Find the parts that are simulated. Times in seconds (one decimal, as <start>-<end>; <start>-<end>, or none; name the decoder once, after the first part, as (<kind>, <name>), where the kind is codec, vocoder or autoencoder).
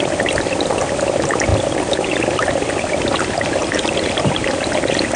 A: 3.6-4.5 (vocoder, BigVGAN v2)